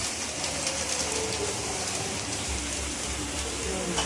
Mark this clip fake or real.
real